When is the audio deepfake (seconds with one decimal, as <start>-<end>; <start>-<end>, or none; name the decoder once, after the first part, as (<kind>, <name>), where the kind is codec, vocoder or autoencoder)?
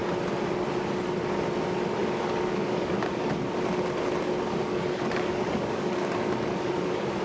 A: 2.0-3.3 (codec, DAC); 4.6-7.2